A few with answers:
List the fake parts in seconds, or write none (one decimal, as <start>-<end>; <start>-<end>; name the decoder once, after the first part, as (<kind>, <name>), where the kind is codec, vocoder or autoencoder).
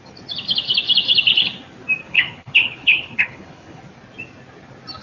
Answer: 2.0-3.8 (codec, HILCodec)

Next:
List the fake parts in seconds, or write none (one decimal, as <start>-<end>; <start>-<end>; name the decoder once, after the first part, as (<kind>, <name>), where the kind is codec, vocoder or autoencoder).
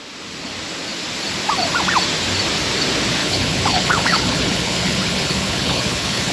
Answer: 3.2-6.3 (codec, HILCodec)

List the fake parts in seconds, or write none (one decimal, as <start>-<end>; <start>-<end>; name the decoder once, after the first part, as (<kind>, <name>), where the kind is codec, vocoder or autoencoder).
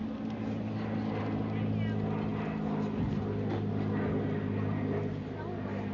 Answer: none